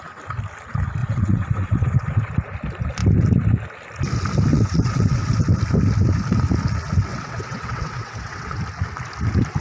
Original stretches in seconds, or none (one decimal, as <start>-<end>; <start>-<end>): 0.0-1.0; 2.3-4.5; 5.4-7.1; 8.6-9.6